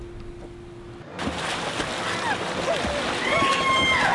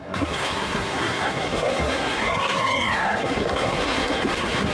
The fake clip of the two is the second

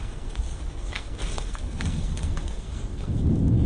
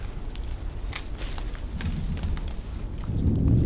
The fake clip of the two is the first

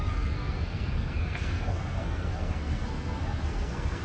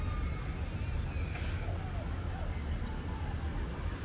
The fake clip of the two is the first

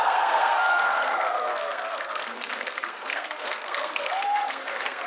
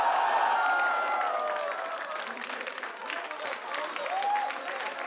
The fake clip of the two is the first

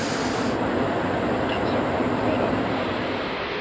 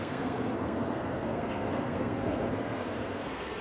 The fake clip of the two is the second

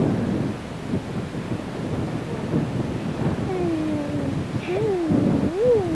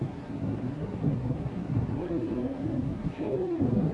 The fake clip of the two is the second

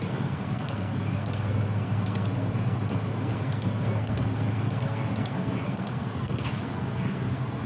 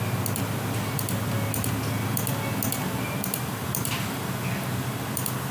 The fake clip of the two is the first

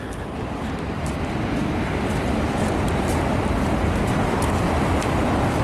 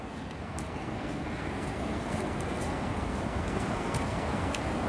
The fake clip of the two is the second